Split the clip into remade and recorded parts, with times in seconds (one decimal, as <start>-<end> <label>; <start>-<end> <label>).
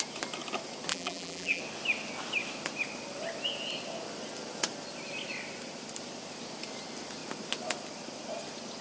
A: 0.0-0.9 recorded; 0.9-1.6 remade; 1.6-8.8 recorded